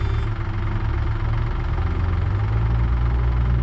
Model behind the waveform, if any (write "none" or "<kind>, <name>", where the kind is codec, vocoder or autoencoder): none